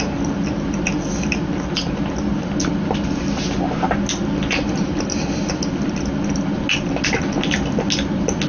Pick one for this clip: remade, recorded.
recorded